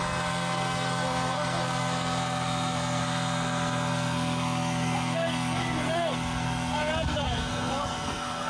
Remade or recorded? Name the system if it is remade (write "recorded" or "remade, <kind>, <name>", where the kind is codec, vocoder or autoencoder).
remade, codec, SNAC